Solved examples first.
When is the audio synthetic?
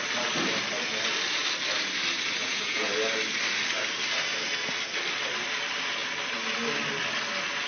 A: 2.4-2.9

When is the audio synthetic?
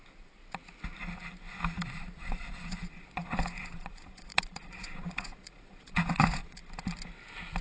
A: 0.0-0.4; 1.9-6.6